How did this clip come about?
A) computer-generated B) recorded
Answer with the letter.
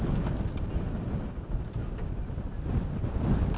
B